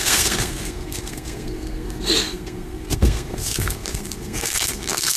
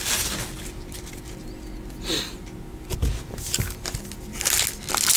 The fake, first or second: first